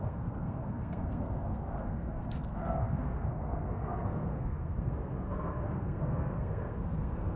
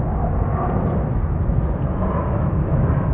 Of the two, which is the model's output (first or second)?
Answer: first